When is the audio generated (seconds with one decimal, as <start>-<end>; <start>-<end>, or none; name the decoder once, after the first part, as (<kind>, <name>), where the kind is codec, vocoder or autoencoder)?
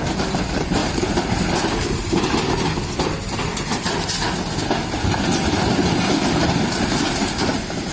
none